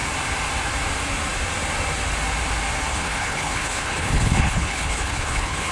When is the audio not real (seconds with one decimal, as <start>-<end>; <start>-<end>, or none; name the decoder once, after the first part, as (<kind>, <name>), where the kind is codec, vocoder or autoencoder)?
2.9-5.7 (codec, HILCodec)